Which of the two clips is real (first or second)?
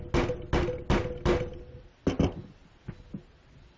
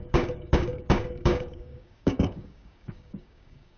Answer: first